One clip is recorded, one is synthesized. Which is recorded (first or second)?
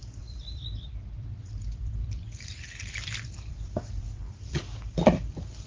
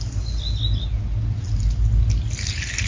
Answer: second